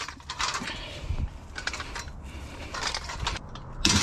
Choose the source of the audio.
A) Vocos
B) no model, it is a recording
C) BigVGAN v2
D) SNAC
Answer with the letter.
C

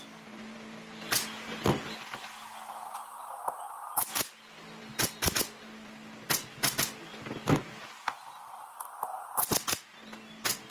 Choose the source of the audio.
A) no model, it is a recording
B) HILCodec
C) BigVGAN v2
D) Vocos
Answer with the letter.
A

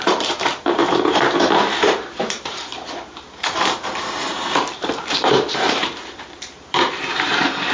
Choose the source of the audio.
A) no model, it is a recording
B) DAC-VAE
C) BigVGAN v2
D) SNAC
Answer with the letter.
C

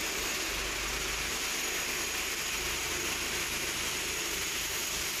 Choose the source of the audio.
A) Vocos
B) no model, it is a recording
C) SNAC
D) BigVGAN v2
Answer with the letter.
B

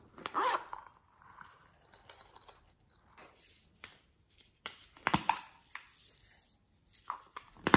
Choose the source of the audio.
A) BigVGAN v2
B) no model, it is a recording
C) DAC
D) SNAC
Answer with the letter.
A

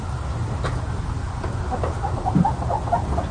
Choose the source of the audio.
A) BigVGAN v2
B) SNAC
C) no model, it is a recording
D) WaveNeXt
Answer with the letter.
C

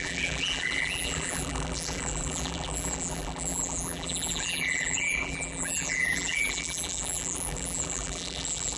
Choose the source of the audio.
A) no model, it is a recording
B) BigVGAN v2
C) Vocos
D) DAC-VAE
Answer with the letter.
B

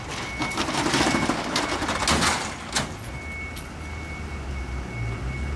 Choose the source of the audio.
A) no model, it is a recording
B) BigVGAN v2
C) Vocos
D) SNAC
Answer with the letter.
A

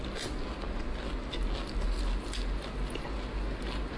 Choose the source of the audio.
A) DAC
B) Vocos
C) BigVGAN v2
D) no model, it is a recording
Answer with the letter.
D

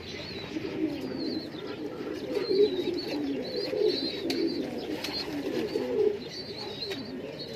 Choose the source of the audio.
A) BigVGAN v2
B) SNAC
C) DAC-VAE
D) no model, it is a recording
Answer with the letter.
D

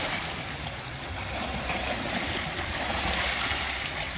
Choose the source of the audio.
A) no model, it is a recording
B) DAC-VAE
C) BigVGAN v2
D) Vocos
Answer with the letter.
A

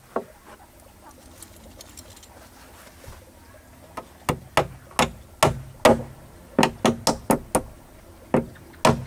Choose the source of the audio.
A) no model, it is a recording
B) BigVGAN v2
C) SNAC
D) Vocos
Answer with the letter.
A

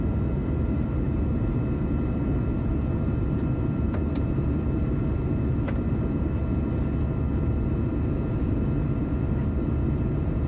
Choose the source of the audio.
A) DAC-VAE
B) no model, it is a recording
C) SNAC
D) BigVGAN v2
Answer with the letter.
D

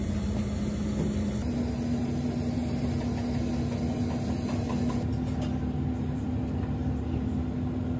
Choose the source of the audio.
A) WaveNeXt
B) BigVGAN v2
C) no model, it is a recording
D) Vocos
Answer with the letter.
C